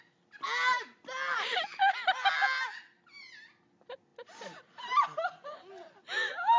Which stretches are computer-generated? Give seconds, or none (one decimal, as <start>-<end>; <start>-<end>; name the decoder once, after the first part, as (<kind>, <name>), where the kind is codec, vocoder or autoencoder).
none